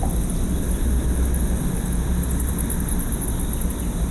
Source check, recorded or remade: recorded